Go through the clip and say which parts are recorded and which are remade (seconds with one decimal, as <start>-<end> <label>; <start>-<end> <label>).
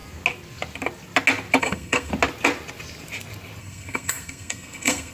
0.0-1.6 recorded; 1.6-2.1 remade; 2.1-3.6 recorded; 3.6-5.1 remade